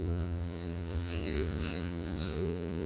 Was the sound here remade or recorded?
remade